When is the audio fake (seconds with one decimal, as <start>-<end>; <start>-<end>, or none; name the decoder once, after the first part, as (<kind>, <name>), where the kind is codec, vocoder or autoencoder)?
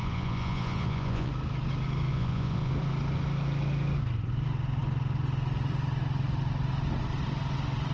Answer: 0.0-1.3 (vocoder, Vocos); 2.1-2.7